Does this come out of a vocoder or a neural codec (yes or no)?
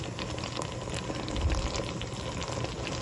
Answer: no